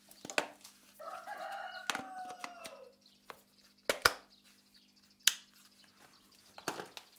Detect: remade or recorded recorded